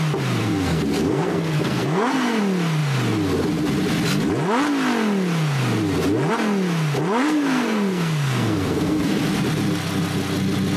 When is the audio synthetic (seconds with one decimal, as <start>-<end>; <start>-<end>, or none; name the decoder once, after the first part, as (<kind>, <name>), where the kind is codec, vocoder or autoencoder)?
0.4-2.4 (codec, SNAC); 7.2-9.2